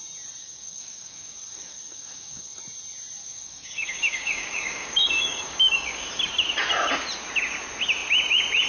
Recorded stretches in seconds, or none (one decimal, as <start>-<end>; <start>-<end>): 0.0-0.4; 2.6-3.2; 6.1-8.7